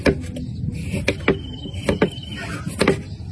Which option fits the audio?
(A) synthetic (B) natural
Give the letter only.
B